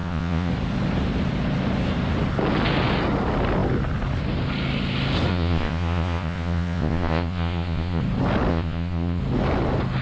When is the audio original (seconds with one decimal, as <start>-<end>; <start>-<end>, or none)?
0.5-5.3; 8.0-8.5; 9.2-10.0